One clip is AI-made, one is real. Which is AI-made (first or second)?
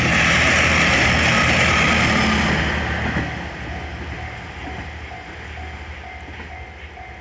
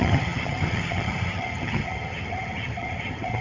second